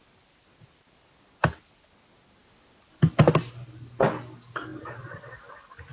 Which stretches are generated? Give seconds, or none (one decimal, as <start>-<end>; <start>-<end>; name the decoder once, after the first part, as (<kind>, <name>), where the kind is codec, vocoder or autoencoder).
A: none